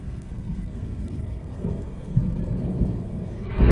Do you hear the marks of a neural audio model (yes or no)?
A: yes